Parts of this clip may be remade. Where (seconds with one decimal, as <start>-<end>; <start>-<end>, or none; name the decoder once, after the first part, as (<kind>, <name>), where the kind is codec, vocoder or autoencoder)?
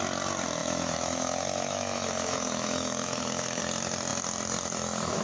0.6-3.6 (autoencoder, DAC-VAE)